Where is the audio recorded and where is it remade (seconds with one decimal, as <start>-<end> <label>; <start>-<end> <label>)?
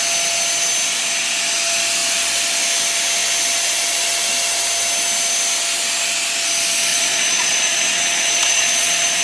0.0-6.9 recorded; 6.9-9.2 remade